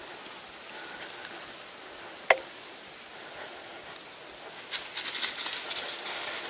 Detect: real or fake real